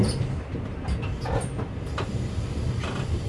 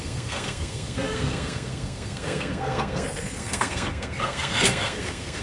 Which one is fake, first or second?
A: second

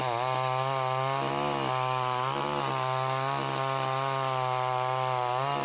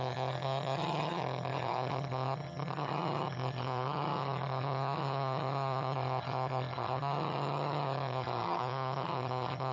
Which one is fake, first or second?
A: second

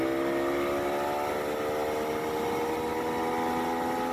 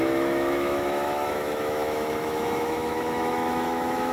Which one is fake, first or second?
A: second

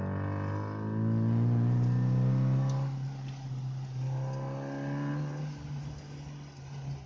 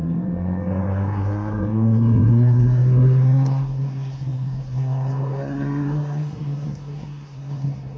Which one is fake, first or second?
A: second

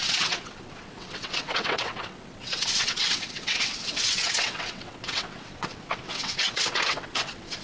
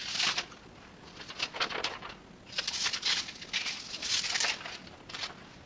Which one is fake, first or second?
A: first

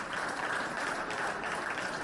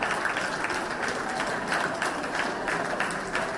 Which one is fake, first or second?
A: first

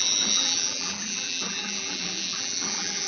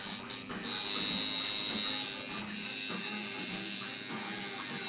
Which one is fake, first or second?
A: first